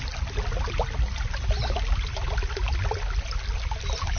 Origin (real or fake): real